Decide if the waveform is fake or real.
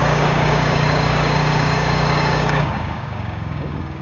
fake